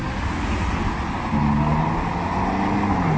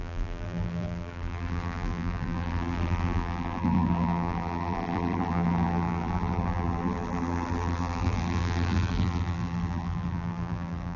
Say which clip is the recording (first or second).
first